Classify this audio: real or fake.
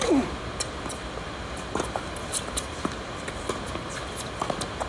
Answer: real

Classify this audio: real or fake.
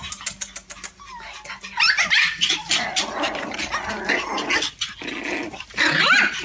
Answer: real